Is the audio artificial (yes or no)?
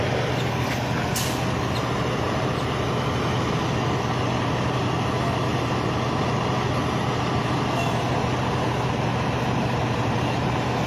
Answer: no